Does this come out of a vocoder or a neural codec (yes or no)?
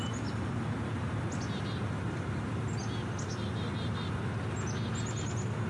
no